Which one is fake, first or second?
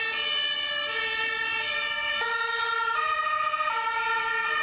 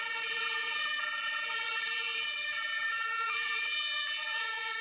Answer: second